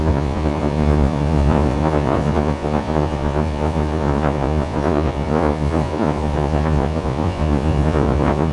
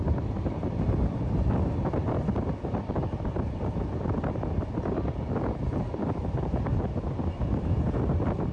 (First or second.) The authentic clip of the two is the second